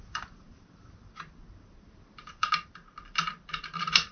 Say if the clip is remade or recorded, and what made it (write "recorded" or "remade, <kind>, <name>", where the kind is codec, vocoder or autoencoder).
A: remade, vocoder, BigVGAN v2